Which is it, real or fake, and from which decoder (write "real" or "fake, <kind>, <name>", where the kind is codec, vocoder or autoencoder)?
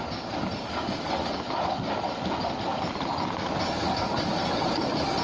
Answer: real